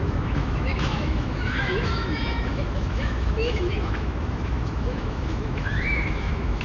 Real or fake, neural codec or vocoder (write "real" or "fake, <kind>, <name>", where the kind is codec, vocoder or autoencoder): fake, autoencoder, DAC-VAE